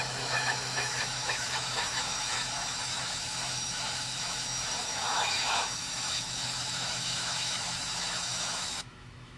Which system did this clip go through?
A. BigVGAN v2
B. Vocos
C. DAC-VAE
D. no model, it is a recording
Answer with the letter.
C